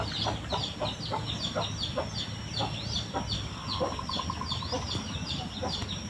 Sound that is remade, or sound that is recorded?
recorded